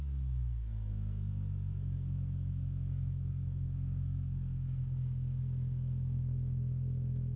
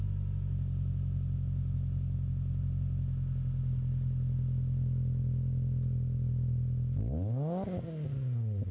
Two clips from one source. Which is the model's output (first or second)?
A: first